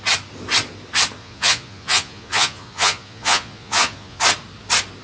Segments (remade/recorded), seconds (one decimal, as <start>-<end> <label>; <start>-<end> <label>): 0.0-1.2 recorded; 1.2-4.2 remade; 4.2-5.0 recorded